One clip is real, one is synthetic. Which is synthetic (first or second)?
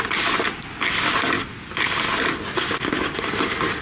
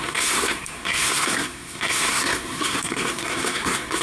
second